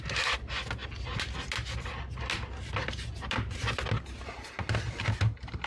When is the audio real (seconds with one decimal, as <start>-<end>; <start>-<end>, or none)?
0.0-5.7